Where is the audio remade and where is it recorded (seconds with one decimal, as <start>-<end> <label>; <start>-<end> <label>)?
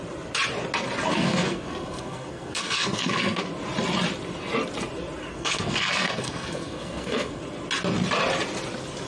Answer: 0.0-1.0 recorded; 1.0-3.5 remade; 3.5-5.3 recorded; 5.3-7.4 remade; 7.4-9.1 recorded